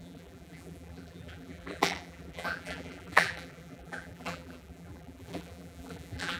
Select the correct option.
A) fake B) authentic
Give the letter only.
A